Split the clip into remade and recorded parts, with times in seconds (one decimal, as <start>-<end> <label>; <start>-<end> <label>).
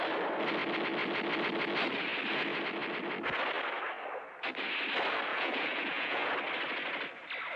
0.0-5.3 recorded; 5.3-6.3 remade; 6.3-7.6 recorded